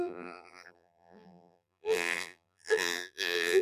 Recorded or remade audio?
remade